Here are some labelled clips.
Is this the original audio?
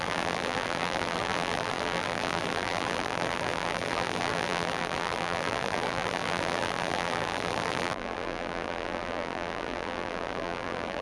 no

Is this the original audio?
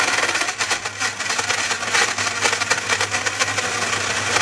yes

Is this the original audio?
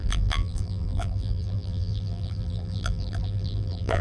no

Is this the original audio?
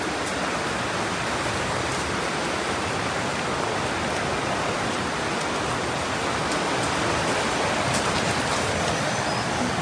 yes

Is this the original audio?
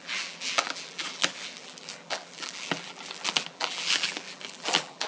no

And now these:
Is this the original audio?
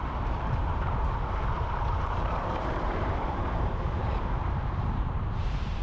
no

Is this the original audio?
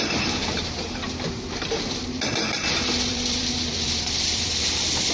no